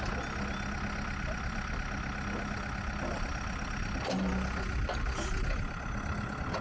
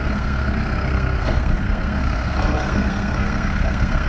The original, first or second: first